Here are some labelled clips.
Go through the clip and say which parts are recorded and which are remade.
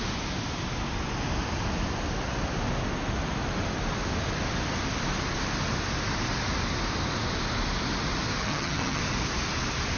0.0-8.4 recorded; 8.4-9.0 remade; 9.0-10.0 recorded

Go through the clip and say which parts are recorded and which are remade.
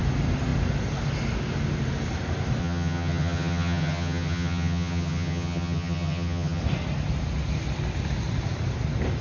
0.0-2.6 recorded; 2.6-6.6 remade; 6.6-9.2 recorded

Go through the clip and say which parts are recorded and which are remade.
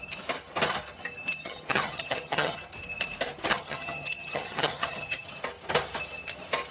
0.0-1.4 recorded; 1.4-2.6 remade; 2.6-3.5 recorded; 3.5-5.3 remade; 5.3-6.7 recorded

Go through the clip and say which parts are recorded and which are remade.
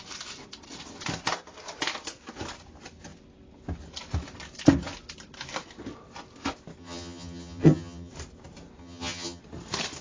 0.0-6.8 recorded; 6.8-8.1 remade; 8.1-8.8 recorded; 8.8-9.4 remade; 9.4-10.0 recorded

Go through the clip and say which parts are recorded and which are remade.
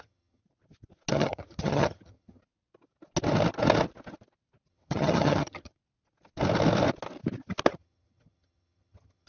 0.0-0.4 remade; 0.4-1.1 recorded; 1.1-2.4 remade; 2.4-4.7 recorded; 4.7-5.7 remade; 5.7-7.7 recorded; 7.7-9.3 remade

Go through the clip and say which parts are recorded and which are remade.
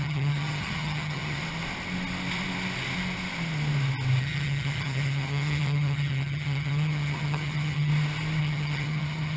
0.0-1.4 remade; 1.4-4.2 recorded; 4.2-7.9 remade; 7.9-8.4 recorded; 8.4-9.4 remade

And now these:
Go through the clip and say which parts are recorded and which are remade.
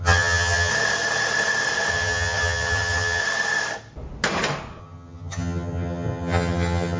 0.0-0.7 remade; 0.7-1.9 recorded; 1.9-3.2 remade; 3.2-4.8 recorded; 4.8-7.0 remade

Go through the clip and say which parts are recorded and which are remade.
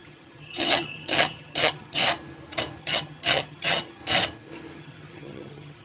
0.0-2.0 remade; 2.0-2.8 recorded; 2.8-4.0 remade; 4.0-4.8 recorded; 4.8-5.8 remade